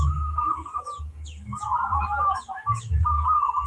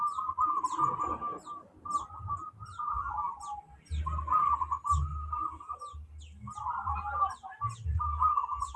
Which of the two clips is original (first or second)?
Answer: second